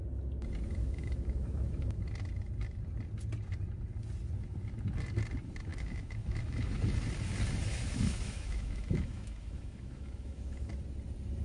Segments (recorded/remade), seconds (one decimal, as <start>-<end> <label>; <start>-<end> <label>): 0.0-0.8 recorded; 0.8-2.0 remade; 2.0-5.7 recorded; 5.7-6.8 remade; 6.8-7.7 recorded; 7.7-10.7 remade; 10.7-11.4 recorded